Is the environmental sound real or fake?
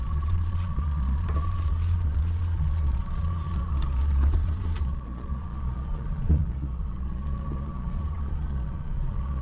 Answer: fake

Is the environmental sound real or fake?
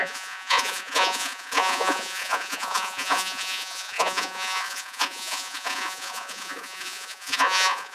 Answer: fake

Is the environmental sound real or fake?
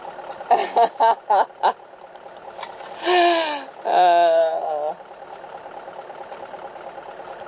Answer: real